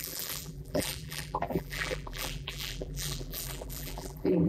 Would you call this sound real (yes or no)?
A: no